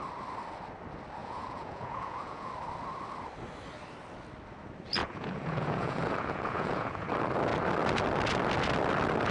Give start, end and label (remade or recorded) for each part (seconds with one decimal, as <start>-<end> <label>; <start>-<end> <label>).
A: 0.0-1.2 recorded; 1.2-2.5 remade; 2.5-5.0 recorded; 5.0-7.1 remade; 7.1-9.3 recorded